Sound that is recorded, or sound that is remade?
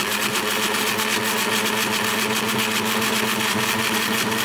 recorded